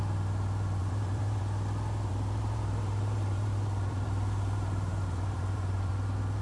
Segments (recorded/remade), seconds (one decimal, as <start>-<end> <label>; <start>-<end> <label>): 0.0-0.8 recorded; 0.8-1.4 remade; 1.4-2.1 recorded; 2.1-5.9 remade; 5.9-6.4 recorded